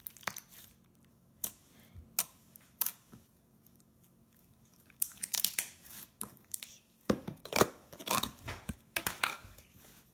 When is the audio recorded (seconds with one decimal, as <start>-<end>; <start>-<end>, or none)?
0.0-1.1; 1.7-2.2